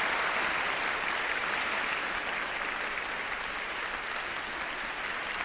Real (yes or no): yes